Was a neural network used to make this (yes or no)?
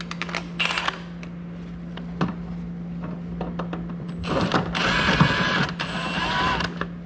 no